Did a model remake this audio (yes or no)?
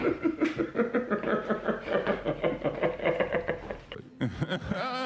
no